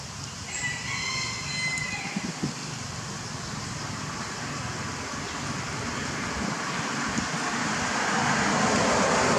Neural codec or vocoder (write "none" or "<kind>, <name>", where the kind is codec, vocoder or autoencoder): none